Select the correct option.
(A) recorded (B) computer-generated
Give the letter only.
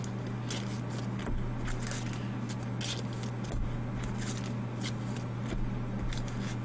A